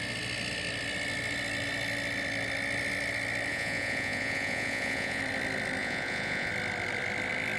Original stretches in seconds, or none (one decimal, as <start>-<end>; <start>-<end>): 0.0-3.5; 5.2-5.8; 6.5-7.6